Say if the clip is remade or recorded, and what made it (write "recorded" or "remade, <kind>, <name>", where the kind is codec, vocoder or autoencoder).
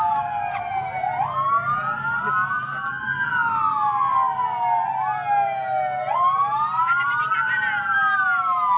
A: recorded